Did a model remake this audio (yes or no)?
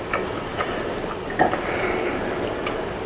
no